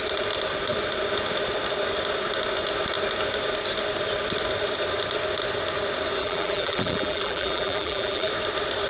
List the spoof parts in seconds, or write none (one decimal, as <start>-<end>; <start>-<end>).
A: 6.2-8.3